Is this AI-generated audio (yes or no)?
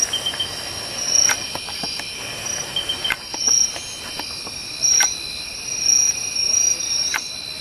no